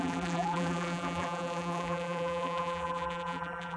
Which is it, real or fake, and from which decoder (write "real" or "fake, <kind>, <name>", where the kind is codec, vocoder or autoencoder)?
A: fake, vocoder, BigVGAN v2